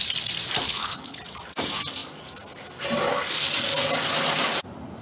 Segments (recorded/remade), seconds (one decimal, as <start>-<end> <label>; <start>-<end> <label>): 0.0-0.6 recorded; 0.6-1.2 remade; 1.2-5.0 recorded